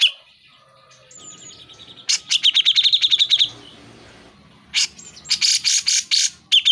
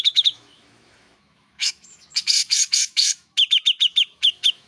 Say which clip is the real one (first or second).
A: first